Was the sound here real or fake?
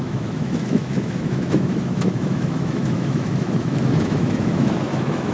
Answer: fake